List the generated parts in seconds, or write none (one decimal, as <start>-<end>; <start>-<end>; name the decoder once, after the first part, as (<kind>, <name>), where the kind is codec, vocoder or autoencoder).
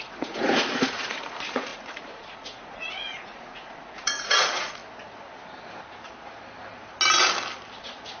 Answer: 0.0-4.8 (vocoder, Vocos)